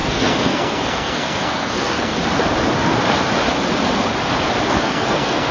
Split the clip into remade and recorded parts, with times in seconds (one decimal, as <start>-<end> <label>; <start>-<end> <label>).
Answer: 0.0-2.1 remade; 2.1-4.7 recorded; 4.7-5.5 remade